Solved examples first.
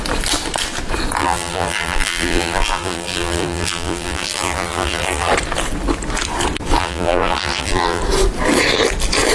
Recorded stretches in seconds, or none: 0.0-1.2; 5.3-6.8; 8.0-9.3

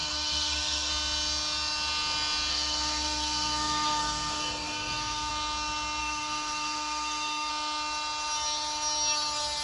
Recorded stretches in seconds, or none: 0.9-2.5; 5.3-6.0; 7.5-9.6

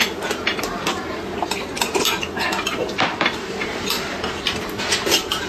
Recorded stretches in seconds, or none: 0.0-0.5; 1.4-2.8

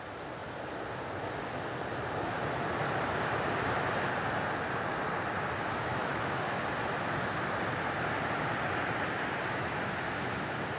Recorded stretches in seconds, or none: 0.0-5.9; 6.6-10.8

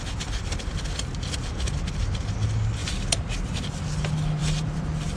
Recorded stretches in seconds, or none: 0.0-5.2